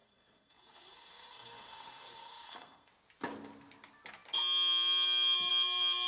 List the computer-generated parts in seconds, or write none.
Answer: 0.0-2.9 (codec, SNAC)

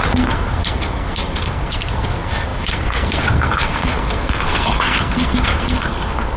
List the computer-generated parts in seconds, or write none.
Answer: 0.0-6.4 (codec, SNAC)